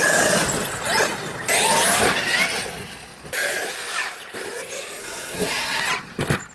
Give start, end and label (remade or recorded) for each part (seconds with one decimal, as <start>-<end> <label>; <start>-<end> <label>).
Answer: 0.0-5.0 recorded; 5.0-5.8 remade; 5.8-6.5 recorded